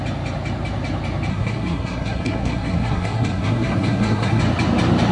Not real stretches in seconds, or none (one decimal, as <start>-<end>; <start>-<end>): 1.3-4.4